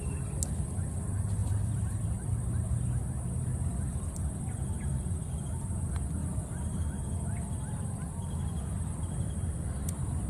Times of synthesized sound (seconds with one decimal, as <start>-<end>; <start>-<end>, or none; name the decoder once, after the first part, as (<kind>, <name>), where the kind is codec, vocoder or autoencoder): 1.4-2.8 (vocoder, BigVGAN v2); 6.2-6.9